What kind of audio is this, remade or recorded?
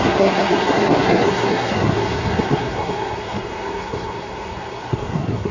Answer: remade